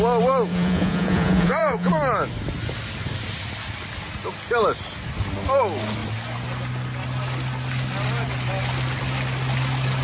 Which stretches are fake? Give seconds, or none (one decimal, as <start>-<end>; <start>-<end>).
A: 0.5-1.9